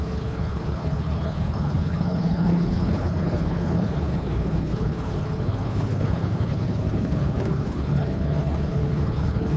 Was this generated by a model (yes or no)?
yes